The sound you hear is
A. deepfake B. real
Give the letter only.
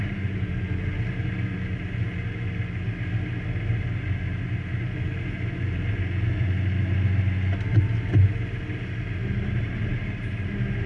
B